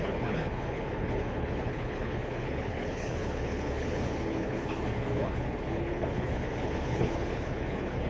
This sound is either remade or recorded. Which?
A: remade